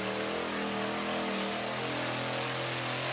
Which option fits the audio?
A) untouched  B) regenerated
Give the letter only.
A